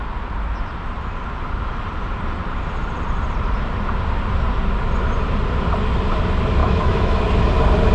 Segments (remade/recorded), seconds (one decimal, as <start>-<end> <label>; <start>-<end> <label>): 0.0-6.6 recorded; 6.6-7.2 remade; 7.2-7.9 recorded